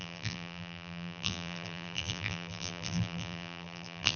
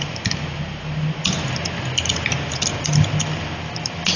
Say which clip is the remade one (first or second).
first